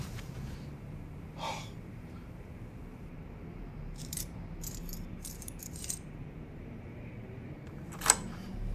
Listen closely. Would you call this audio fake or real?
fake